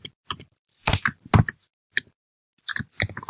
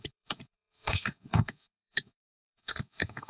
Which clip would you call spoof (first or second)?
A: second